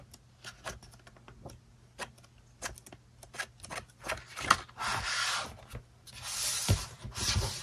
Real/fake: real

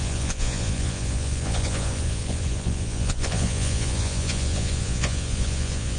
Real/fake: fake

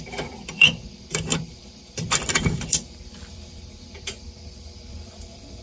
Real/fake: fake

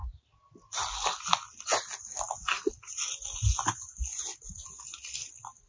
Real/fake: real